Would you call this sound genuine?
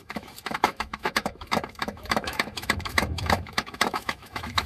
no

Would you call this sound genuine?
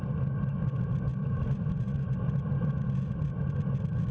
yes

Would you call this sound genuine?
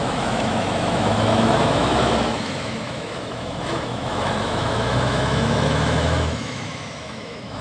no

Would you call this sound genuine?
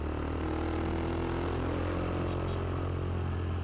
yes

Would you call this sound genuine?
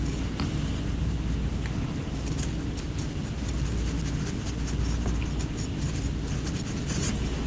yes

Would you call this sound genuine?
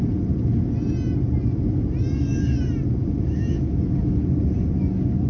yes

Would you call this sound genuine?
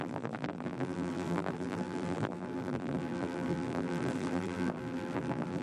no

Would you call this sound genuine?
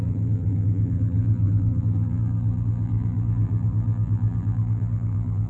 no